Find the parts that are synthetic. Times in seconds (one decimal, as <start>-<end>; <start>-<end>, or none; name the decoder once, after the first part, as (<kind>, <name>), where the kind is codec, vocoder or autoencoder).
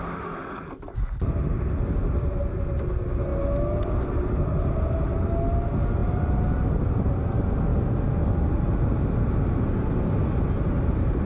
none